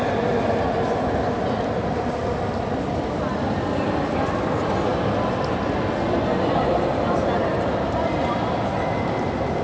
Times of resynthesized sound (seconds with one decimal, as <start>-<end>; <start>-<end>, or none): none